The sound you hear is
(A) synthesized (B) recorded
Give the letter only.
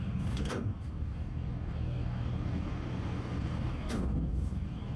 A